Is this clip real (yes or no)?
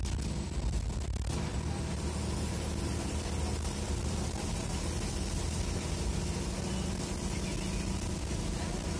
yes